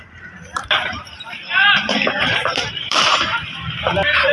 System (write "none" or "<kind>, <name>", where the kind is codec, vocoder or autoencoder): vocoder, BigVGAN v2